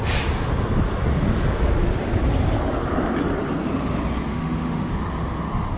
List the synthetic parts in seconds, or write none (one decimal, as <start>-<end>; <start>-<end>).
4.3-4.9